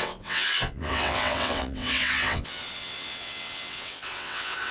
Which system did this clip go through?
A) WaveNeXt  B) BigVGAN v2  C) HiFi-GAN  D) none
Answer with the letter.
A